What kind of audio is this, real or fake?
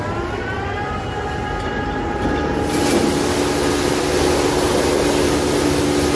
real